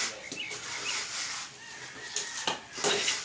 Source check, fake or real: fake